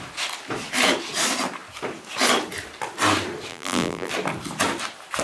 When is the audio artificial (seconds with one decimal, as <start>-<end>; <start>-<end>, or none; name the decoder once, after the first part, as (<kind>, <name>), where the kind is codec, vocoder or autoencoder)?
3.5-4.1 (vocoder, BigVGAN v2)